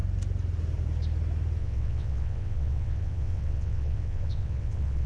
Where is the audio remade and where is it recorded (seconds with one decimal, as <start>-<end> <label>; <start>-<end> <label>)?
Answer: 0.0-1.6 recorded; 1.6-5.1 remade